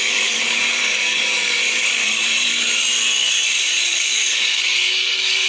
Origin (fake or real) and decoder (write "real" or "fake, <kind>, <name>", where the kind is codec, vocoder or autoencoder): fake, codec, DAC